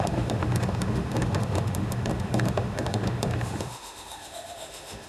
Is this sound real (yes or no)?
no